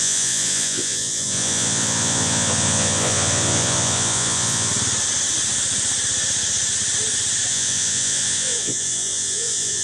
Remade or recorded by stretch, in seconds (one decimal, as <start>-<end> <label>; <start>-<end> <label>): 0.0-4.7 remade; 4.7-7.5 recorded; 7.5-9.8 remade